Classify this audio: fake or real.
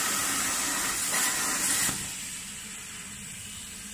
real